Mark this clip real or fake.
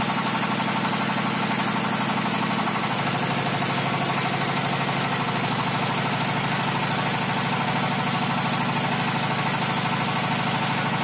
real